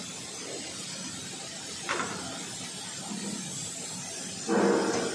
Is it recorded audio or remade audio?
recorded